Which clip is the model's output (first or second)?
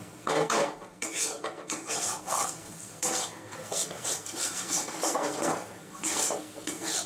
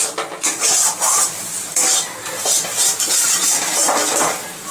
first